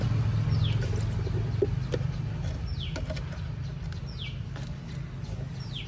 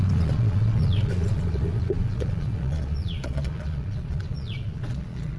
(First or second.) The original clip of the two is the first